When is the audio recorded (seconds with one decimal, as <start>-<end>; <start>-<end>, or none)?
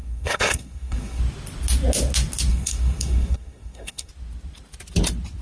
1.2-2.5; 4.1-5.4